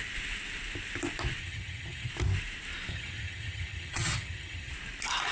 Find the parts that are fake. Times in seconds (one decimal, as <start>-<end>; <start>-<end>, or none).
1.4-2.1; 2.9-4.7